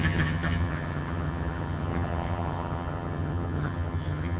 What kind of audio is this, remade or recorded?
remade